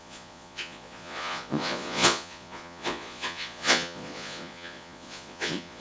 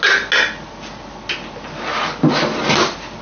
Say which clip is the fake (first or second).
first